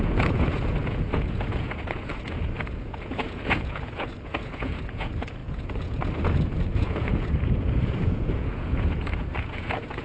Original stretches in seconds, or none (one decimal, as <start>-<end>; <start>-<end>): none